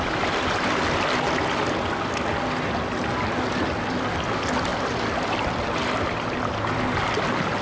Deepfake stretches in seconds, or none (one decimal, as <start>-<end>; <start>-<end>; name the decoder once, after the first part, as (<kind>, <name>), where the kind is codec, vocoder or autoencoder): none